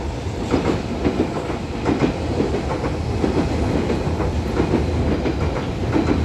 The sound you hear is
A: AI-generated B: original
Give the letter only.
B